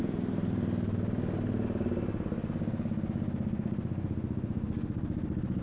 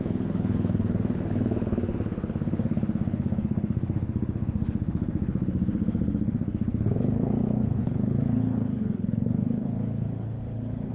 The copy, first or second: second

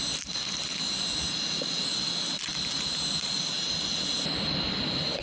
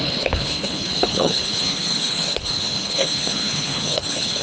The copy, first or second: second